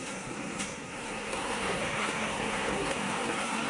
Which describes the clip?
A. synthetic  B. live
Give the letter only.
A